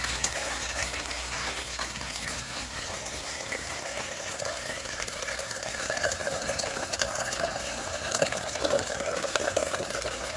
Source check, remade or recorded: remade